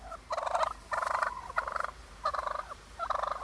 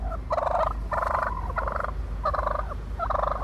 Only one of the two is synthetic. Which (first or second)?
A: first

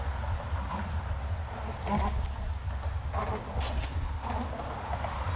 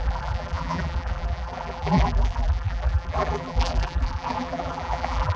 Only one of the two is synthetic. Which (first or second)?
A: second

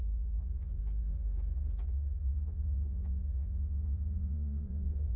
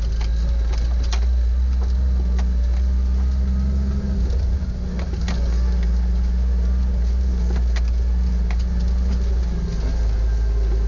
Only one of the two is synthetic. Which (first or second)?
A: first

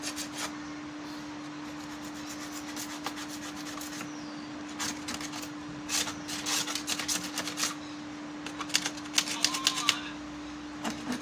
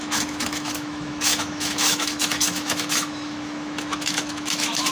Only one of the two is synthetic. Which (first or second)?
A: second